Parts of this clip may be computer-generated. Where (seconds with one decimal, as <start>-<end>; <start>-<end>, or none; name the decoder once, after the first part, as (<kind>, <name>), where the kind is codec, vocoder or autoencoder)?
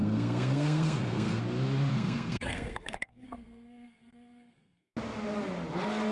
0.0-1.4 (codec, SNAC); 1.9-5.0